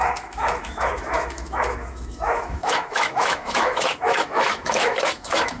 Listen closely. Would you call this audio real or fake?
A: fake